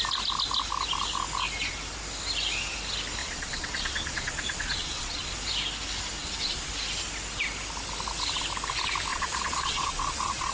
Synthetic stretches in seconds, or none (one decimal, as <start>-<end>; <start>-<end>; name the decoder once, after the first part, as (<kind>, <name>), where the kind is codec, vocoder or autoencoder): 3.2-5.3 (vocoder, Vocos); 6.2-6.7; 9.1-10.5